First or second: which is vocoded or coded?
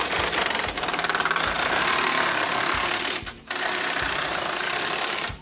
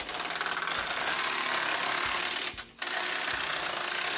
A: first